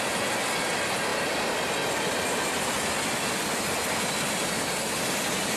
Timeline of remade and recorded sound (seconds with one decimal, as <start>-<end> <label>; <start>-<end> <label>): 0.0-5.6 recorded